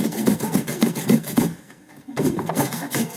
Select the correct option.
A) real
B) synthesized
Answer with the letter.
B